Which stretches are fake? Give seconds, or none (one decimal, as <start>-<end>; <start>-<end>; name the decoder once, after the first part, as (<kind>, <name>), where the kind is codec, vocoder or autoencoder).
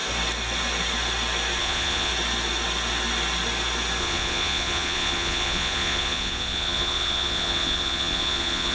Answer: 1.6-2.1 (vocoder, Vocos); 4.0-8.7